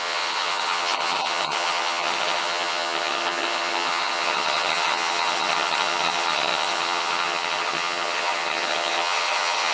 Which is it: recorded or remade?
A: remade